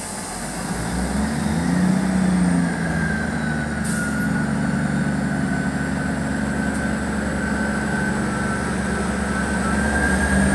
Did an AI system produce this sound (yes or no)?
no